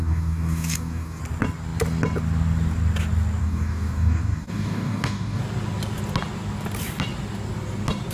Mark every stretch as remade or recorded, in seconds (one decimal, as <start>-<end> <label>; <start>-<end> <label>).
0.0-1.2 remade; 1.2-3.4 recorded; 3.4-5.4 remade; 5.4-8.1 recorded